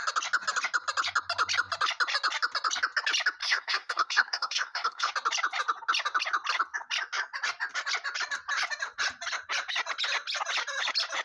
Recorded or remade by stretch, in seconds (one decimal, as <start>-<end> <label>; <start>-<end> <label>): 0.0-3.4 recorded; 3.4-5.1 remade; 5.1-11.2 recorded